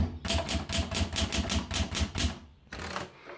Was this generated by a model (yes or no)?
no